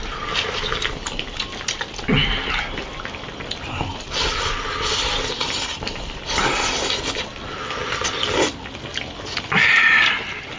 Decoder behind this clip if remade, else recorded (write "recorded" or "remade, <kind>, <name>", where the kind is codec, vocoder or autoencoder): recorded